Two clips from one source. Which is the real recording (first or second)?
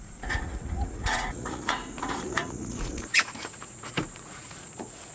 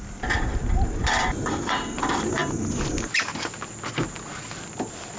second